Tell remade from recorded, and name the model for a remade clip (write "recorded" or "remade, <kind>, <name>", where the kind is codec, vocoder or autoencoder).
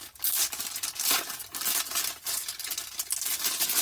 remade, vocoder, BigVGAN v2